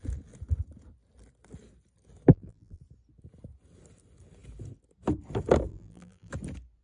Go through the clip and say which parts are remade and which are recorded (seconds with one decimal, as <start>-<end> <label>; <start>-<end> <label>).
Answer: 0.0-2.3 recorded; 2.3-2.8 remade; 2.8-5.7 recorded; 5.7-6.3 remade; 6.3-6.8 recorded